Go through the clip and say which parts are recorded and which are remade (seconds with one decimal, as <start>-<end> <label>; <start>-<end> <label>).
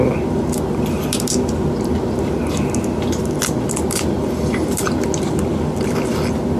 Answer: 0.0-6.6 recorded